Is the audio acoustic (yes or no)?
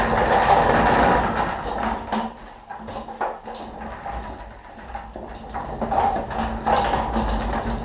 yes